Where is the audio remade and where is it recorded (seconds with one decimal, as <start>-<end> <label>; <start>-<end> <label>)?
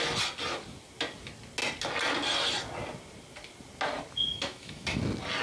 0.0-4.3 recorded; 4.3-5.0 remade; 5.0-5.4 recorded